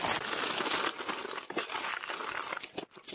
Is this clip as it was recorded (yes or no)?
yes